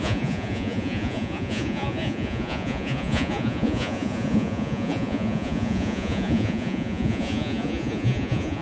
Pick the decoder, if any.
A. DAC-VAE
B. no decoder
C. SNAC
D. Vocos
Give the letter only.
D